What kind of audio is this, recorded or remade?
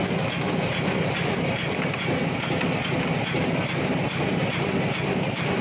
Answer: recorded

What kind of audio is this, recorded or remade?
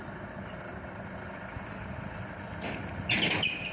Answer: recorded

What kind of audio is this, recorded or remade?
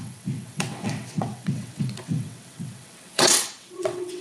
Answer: remade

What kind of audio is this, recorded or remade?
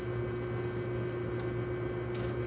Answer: recorded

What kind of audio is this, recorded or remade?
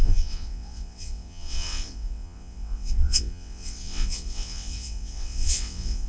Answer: remade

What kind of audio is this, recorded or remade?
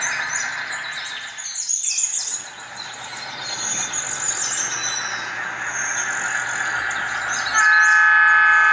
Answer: recorded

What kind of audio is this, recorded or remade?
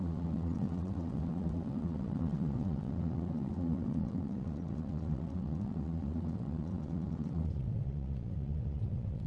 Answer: remade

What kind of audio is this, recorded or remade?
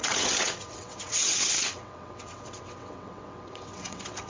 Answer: remade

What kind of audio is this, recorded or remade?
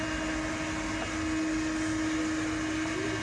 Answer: recorded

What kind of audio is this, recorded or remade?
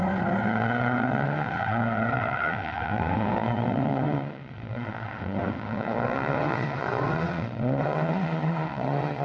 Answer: remade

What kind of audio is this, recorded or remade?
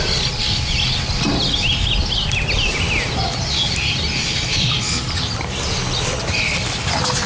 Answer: recorded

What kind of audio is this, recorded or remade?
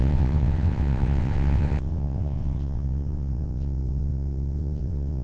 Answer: remade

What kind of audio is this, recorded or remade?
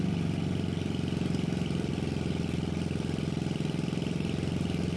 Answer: recorded